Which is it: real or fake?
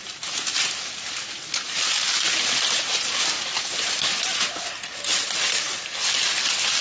real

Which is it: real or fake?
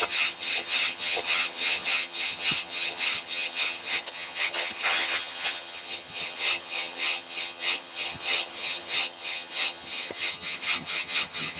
fake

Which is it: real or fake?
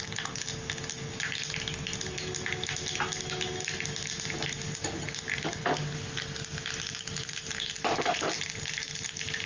real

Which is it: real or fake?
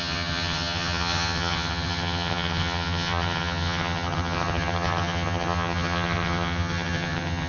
fake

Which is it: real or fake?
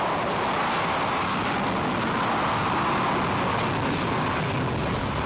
real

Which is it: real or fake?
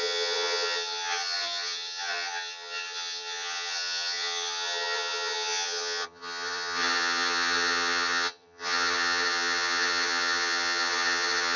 fake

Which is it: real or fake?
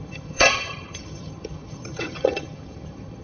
fake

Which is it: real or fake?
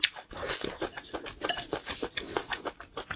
real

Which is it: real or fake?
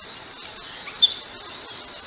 real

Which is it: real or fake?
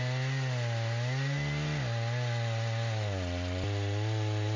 real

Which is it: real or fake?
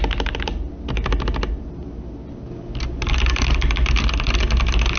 real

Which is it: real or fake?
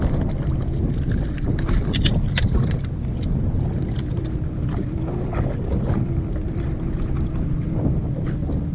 real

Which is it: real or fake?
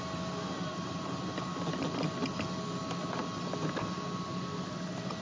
real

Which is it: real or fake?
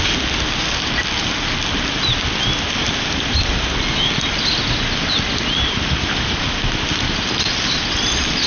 real